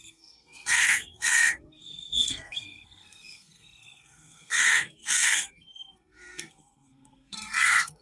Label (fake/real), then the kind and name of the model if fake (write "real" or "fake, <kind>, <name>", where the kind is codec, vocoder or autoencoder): fake, codec, SNAC